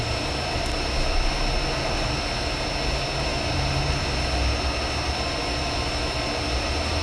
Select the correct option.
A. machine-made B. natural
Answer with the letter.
B